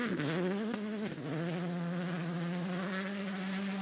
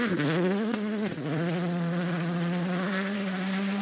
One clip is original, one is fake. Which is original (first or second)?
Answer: first